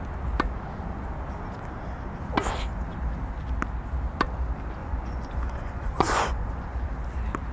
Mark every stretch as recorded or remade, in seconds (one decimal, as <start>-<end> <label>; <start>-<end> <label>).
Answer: 0.0-4.8 recorded; 4.8-6.9 remade; 6.9-7.5 recorded